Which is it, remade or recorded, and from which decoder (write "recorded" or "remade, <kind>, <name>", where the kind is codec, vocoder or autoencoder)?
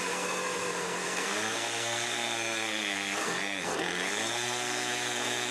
remade, codec, SNAC